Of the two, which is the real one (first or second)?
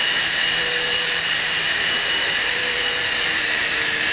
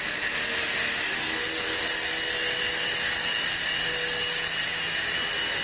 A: second